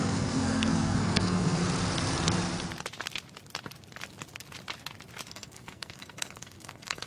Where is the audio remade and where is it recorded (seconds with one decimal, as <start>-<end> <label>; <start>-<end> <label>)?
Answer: 0.0-1.6 remade; 1.6-5.3 recorded; 5.3-7.1 remade